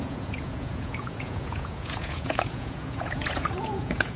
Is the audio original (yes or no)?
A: no